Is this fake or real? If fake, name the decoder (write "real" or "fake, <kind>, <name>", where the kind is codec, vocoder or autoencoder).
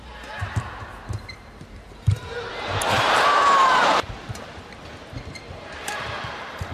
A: fake, vocoder, BigVGAN v2